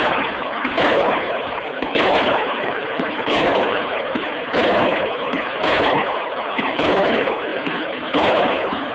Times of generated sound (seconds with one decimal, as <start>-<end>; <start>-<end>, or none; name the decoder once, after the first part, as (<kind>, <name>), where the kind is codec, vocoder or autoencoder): 0.0-8.9 (codec, HILCodec)